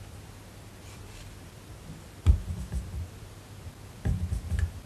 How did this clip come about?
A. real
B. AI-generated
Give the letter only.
A